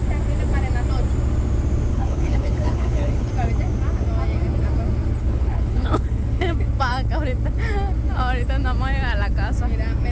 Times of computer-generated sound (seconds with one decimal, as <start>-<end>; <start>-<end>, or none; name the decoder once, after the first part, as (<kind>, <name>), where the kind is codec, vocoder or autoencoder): 1.9-3.3 (codec, HILCodec); 5.2-6.4